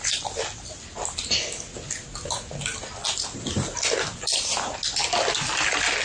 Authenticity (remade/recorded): recorded